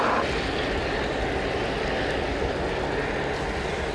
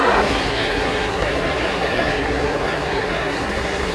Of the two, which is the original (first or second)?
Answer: first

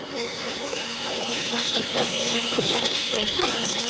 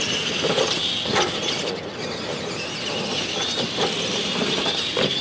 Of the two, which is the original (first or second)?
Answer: second